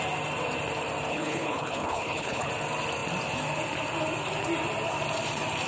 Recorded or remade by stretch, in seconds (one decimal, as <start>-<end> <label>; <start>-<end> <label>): 0.0-1.1 recorded; 1.1-2.5 remade; 2.5-5.7 recorded